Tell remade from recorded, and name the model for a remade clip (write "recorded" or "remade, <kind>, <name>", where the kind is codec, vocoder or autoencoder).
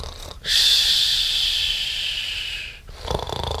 recorded